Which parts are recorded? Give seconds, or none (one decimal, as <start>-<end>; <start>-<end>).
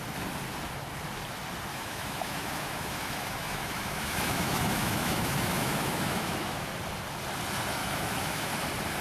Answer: 0.0-1.7; 6.7-7.8; 8.5-9.0